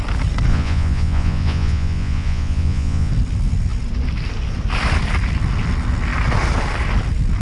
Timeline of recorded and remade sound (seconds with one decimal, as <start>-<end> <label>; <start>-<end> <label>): 0.0-0.5 recorded; 0.5-3.1 remade; 3.1-7.4 recorded